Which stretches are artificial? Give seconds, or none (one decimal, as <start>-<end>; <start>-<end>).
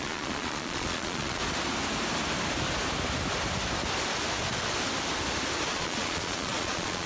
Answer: 0.0-1.4; 5.7-7.1